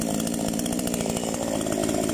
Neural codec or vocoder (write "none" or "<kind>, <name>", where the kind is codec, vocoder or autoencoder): none